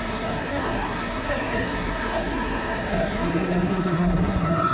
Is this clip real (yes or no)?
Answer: no